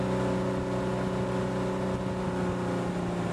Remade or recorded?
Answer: recorded